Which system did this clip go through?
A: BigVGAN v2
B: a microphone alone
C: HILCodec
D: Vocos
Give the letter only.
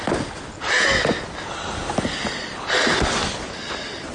B